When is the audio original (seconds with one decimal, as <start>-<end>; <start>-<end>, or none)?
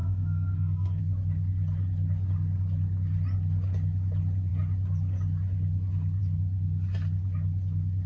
1.0-8.1